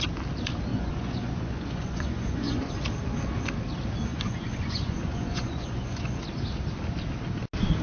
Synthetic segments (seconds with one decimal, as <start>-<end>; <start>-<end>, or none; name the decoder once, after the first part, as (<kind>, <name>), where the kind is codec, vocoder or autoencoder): 0.7-2.7 (vocoder, Vocos); 4.1-6.2